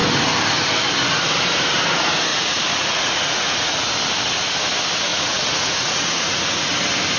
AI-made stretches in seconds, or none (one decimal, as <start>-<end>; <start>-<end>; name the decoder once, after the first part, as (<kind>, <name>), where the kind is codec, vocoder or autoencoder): 2.3-3.9 (vocoder, Vocos); 5.1-6.8